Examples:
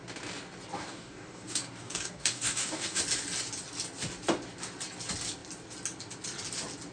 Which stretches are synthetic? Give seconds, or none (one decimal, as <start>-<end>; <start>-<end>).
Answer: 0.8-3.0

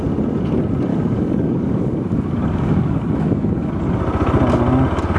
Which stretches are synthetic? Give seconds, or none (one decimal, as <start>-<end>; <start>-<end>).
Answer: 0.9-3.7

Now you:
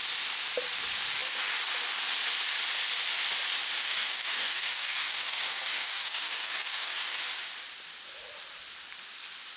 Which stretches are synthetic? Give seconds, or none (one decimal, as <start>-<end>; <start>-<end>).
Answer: 3.8-7.2